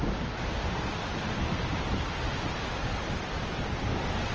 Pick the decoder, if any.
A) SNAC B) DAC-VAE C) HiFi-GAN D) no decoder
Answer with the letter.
D